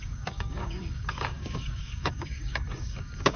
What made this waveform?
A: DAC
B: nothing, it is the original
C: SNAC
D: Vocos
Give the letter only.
A